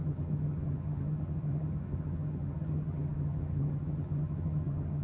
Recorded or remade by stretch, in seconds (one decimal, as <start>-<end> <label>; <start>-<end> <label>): 0.0-5.0 remade